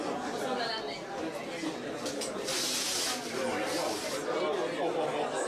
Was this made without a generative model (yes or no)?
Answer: yes